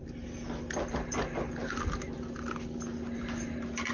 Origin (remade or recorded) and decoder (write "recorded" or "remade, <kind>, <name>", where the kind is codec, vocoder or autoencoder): recorded